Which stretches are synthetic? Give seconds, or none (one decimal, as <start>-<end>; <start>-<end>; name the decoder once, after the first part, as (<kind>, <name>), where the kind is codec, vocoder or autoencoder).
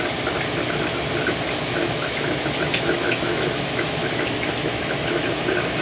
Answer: 1.8-5.3 (autoencoder, DAC-VAE)